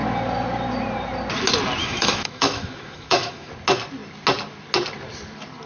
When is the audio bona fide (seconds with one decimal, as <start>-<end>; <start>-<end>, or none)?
0.0-1.8; 3.5-5.7